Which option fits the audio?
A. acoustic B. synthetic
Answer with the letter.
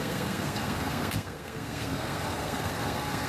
B